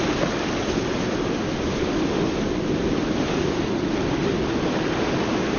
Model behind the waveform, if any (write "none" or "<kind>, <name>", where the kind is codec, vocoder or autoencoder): none